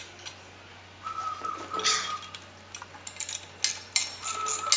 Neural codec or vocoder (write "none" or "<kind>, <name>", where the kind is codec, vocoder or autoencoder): none